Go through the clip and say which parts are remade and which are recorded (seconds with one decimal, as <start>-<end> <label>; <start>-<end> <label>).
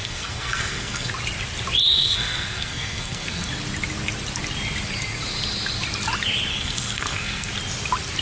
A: 0.0-1.1 remade; 1.1-1.9 recorded; 1.9-3.5 remade; 3.5-6.5 recorded; 6.5-7.5 remade; 7.5-8.2 recorded